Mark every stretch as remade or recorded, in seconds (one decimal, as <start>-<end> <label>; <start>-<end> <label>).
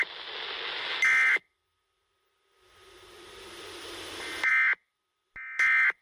0.0-6.0 recorded